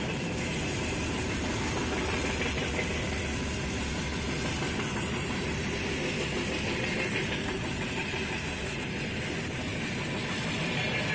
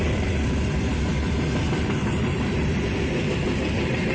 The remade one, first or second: second